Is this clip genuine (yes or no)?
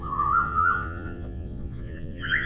no